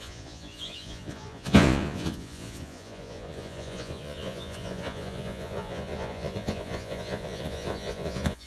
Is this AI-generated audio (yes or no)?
yes